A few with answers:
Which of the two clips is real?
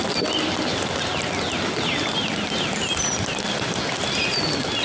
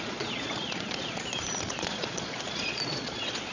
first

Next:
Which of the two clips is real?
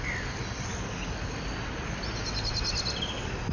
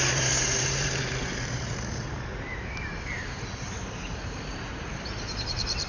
first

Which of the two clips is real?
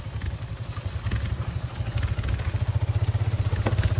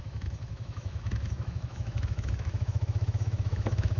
first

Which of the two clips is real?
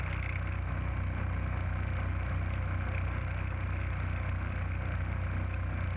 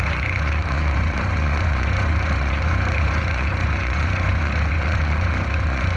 first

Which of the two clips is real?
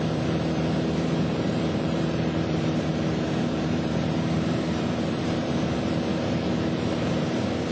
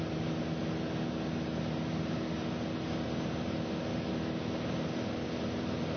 second